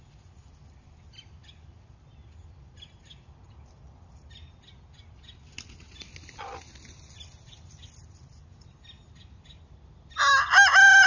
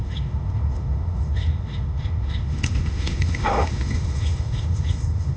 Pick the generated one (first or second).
second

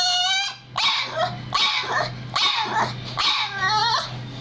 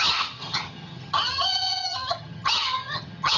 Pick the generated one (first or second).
second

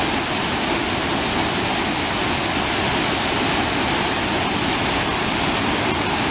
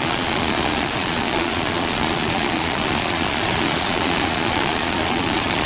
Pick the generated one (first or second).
second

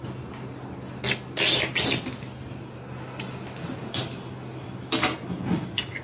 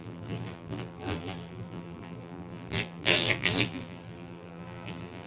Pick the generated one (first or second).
second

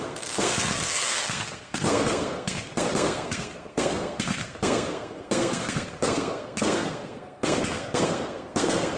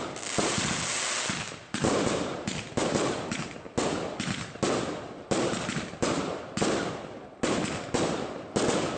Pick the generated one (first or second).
first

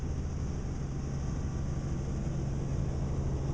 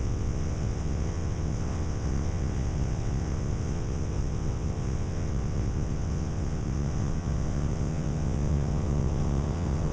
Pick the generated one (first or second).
second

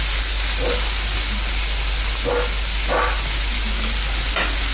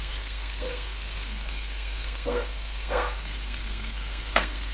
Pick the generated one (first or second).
second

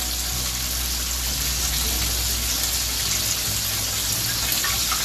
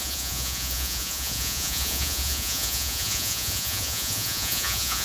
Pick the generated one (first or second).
second